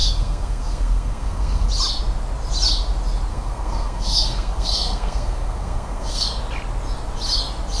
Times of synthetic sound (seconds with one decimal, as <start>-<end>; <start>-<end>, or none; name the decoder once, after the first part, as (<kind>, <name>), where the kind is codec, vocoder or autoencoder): 0.0-1.7 (codec, SNAC); 3.3-6.4